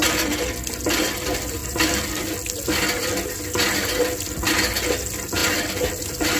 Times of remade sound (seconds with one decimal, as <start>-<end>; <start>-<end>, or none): none